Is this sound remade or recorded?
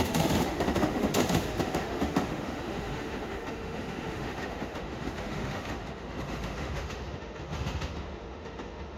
remade